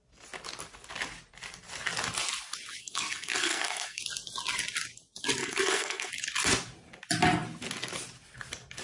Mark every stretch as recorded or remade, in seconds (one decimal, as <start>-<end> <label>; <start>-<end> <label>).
0.0-2.8 recorded; 2.8-4.0 remade; 4.0-5.4 recorded; 5.4-6.1 remade; 6.1-8.8 recorded